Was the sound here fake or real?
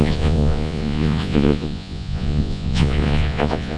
fake